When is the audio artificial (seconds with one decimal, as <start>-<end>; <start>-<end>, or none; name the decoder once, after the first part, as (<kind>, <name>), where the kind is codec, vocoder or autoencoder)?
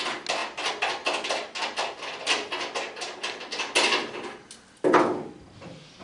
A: none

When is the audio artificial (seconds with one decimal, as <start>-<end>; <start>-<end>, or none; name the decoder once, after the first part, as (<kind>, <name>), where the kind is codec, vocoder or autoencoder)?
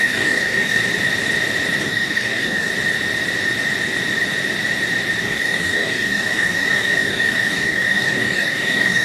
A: 0.0-0.8 (codec, DAC); 1.8-2.7; 5.2-9.0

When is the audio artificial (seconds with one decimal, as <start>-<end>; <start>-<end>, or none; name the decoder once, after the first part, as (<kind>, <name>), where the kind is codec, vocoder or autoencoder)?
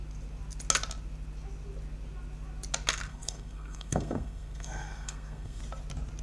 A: 3.1-5.6 (codec, SNAC)